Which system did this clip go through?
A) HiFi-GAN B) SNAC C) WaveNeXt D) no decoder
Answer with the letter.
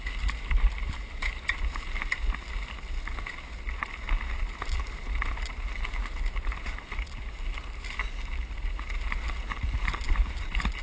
D